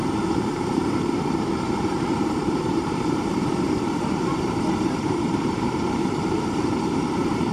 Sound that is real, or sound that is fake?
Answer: fake